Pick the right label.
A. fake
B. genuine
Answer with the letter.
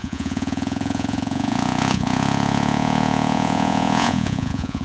A